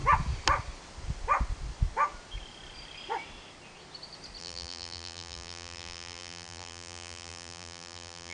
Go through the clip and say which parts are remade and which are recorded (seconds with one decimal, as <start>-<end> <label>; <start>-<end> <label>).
0.0-4.4 recorded; 4.4-8.3 remade